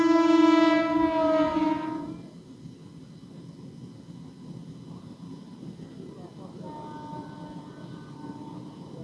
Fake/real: real